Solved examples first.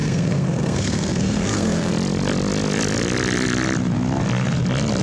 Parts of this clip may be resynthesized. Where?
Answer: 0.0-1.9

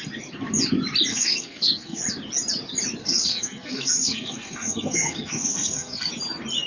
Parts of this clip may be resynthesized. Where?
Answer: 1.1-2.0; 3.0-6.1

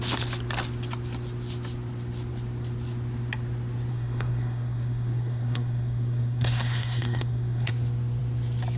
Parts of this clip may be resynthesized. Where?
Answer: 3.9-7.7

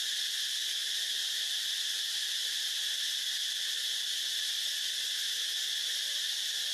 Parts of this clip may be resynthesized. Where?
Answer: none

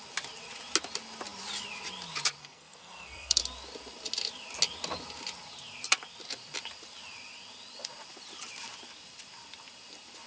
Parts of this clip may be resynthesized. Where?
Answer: 2.4-3.4